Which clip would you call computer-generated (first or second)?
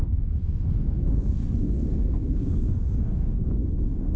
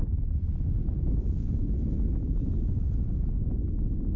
first